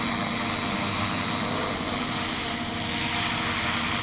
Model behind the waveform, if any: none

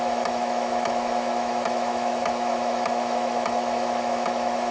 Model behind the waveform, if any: autoencoder, DAC-VAE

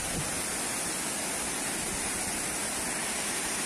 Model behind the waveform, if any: none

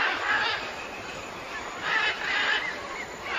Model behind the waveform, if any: none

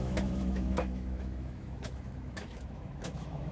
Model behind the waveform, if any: autoencoder, DAC-VAE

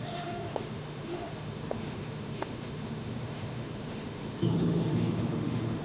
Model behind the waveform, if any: autoencoder, DAC-VAE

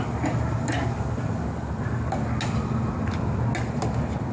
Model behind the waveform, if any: none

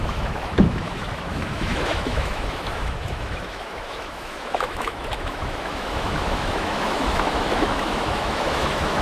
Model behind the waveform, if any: autoencoder, DAC-VAE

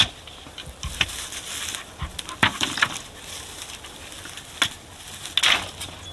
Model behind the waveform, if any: none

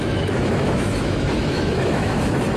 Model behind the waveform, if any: autoencoder, DAC-VAE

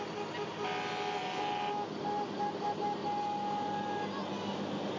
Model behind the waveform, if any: none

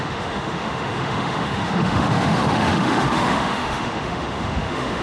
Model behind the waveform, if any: autoencoder, DAC-VAE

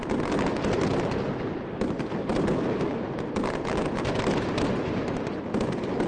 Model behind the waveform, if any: none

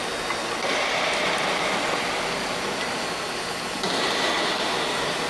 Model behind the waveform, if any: none